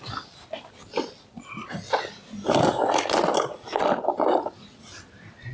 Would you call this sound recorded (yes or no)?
yes